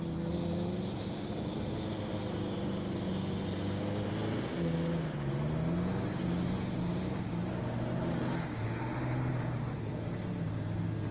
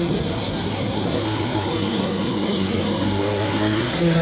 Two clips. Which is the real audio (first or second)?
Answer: first